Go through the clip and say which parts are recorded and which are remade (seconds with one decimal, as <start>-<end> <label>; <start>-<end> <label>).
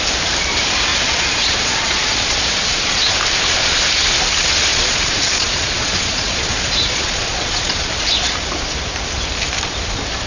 0.0-0.9 recorded; 0.9-3.1 remade; 3.1-4.7 recorded; 4.7-7.8 remade; 7.8-10.3 recorded